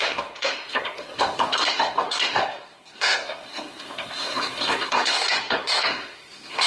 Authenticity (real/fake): fake